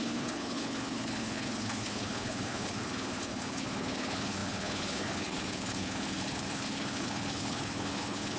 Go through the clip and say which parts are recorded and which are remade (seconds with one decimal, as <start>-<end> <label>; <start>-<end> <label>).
0.0-8.4 remade